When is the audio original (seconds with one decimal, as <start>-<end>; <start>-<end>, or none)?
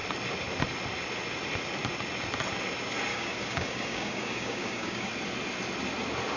0.0-3.1; 5.1-6.4